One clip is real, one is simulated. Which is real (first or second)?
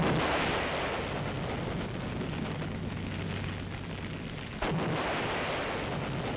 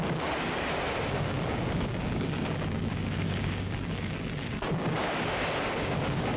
first